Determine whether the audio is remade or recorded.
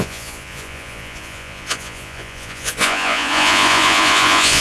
remade